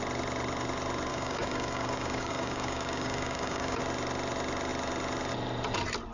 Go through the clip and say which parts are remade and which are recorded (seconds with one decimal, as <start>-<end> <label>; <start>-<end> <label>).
0.0-1.1 recorded; 1.1-3.8 remade; 3.8-6.1 recorded